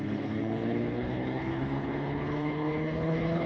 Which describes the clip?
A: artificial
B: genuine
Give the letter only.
A